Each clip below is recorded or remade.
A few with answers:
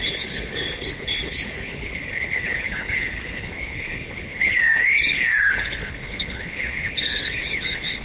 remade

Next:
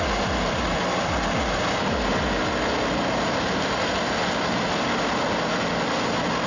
recorded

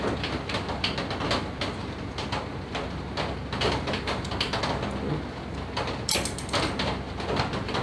recorded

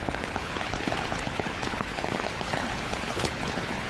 remade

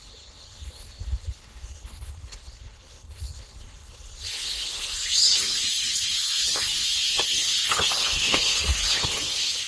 remade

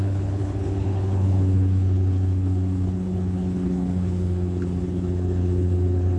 remade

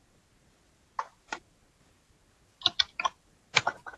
recorded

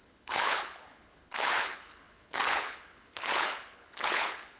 remade